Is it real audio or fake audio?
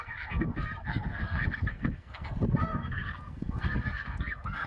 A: fake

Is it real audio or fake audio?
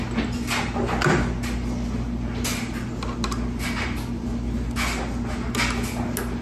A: real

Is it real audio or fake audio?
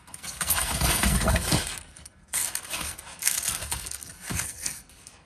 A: fake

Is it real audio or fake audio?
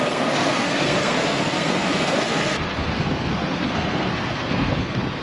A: fake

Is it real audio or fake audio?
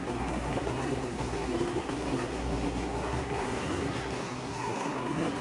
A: fake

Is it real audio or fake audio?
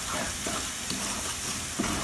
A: real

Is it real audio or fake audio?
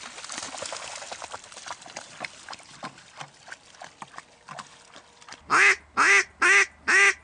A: real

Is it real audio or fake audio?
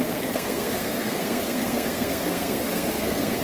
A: fake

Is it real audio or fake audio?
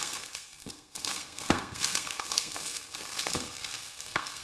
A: fake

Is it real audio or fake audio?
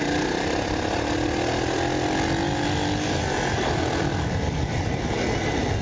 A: real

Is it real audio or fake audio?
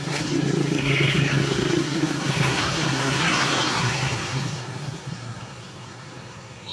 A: fake